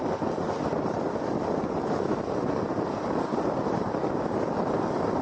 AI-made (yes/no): no